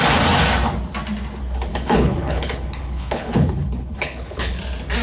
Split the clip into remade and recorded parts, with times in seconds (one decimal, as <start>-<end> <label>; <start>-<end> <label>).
0.0-1.7 recorded; 1.7-4.6 remade; 4.6-5.0 recorded